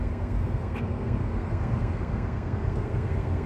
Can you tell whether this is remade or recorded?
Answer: remade